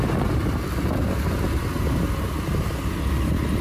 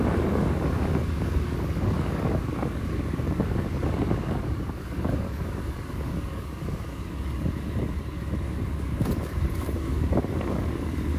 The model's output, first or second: second